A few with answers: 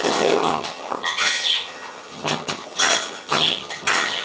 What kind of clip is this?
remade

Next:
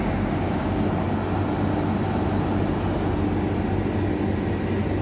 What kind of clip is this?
recorded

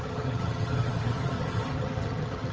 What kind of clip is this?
remade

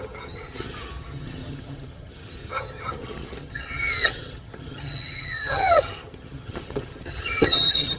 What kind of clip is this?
remade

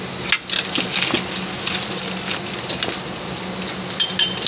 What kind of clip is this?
recorded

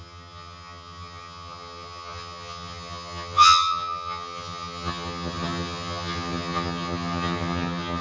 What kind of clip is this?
remade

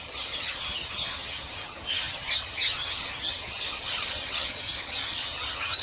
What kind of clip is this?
remade